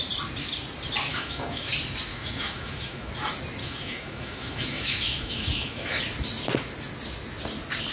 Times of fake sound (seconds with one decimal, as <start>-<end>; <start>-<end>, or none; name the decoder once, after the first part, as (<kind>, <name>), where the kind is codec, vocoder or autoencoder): 1.1-1.7 (autoencoder, DAC-VAE); 2.1-3.1; 3.6-6.0